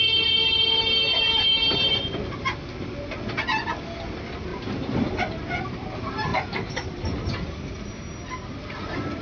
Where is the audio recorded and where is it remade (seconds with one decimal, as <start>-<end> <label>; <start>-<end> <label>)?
0.0-0.4 recorded; 0.4-2.0 remade; 2.0-4.5 recorded; 4.5-5.3 remade; 5.3-6.3 recorded; 6.3-7.3 remade; 7.3-9.2 recorded

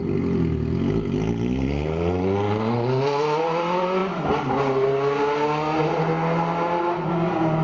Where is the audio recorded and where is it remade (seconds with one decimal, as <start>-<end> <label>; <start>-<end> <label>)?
0.0-7.6 recorded

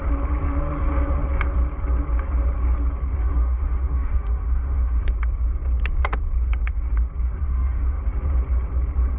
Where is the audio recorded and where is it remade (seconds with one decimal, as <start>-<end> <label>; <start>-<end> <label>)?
0.0-3.2 recorded; 3.2-5.0 remade; 5.0-7.4 recorded; 7.4-8.0 remade; 8.0-9.2 recorded

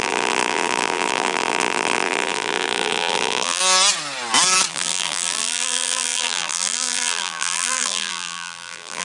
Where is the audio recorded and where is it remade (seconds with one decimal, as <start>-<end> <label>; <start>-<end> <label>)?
0.0-3.6 remade; 3.6-4.7 recorded; 4.7-9.0 remade